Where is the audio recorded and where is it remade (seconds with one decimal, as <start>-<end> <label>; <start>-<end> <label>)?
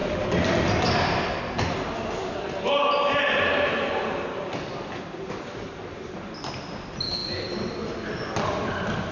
0.0-9.1 recorded